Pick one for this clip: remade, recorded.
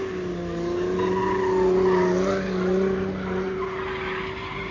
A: recorded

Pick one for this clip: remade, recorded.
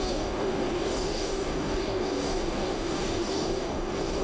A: remade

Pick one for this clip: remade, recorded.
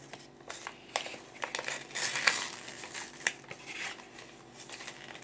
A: recorded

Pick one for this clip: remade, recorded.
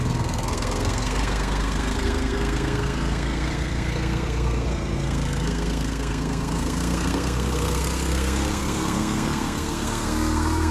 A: remade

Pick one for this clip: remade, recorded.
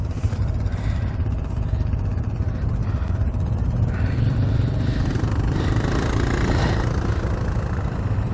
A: remade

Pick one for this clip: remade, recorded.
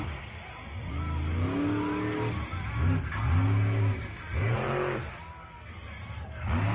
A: recorded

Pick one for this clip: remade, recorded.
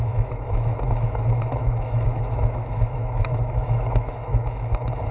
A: remade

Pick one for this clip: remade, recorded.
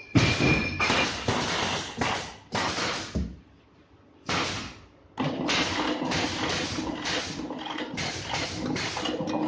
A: recorded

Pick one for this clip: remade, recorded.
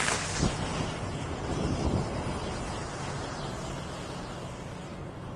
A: recorded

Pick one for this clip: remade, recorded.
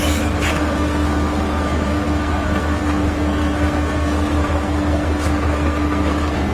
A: remade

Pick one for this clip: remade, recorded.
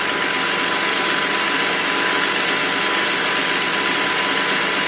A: recorded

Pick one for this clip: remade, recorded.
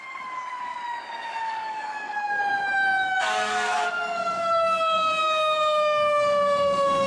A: remade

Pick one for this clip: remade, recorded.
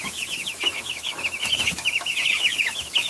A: remade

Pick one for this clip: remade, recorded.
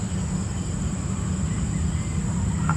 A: recorded